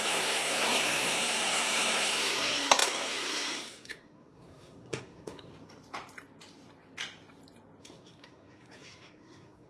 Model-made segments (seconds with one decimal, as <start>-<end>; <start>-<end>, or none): 0.0-5.5; 7.8-9.7